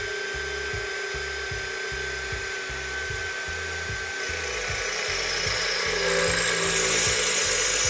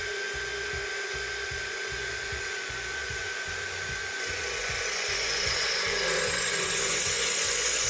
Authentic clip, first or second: first